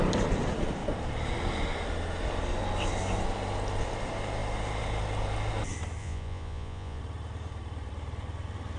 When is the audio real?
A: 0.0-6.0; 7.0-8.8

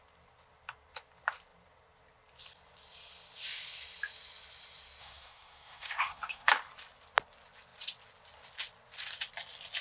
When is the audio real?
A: 0.0-5.0; 6.5-9.8

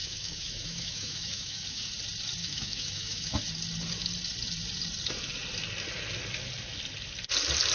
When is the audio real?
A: 1.9-2.4; 3.4-7.7

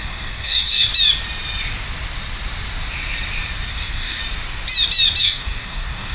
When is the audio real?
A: 0.9-3.7; 4.2-5.2

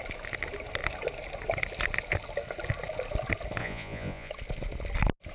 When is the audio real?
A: 0.0-3.6; 4.3-5.3

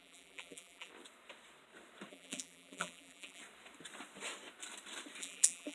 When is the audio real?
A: 0.9-2.1; 3.4-5.2

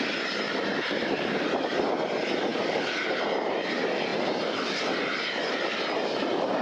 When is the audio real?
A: 0.0-0.7; 1.7-6.6

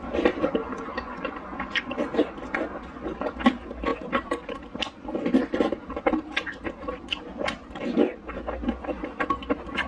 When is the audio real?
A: 0.0-0.6; 1.8-9.9